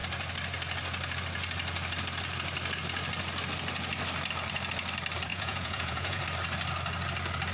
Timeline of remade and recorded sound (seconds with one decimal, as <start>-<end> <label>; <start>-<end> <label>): 0.0-5.3 recorded; 5.3-6.2 remade; 6.2-7.5 recorded